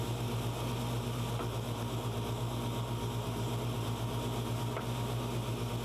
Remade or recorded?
recorded